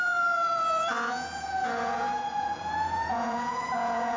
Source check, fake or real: fake